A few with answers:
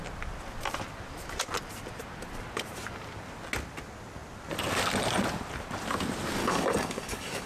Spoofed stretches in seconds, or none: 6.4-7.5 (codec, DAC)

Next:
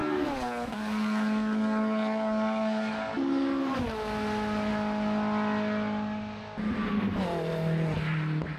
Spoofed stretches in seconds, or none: 0.0-3.8 (codec, DAC)

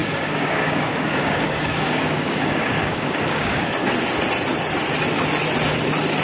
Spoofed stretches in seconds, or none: 0.0-3.7 (codec, DAC)

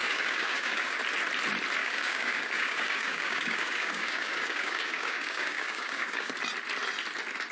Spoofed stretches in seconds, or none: 0.0-1.0 (codec, DAC); 1.8-6.3

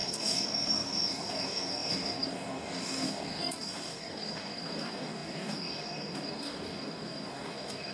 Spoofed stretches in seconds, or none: 0.0-7.9 (codec, DAC)

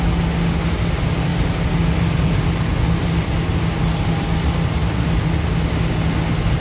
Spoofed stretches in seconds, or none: none

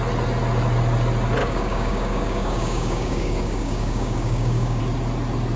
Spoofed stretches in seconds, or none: 1.4-4.8 (codec, DAC)